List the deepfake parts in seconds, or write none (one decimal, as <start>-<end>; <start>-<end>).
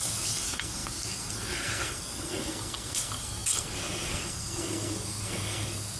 0.0-6.0